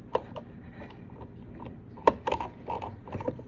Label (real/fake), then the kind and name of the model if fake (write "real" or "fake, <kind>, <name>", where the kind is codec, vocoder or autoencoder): real